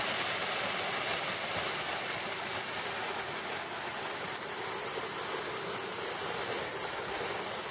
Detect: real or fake real